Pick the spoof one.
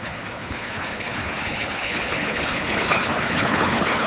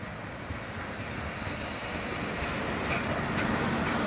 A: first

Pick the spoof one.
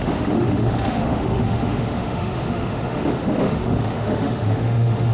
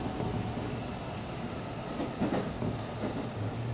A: first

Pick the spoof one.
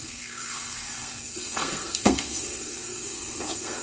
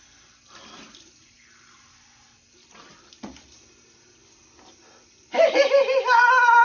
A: first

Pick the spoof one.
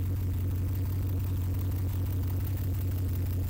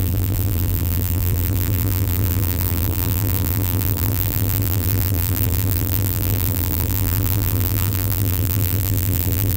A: second